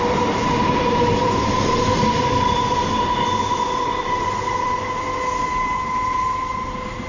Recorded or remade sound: remade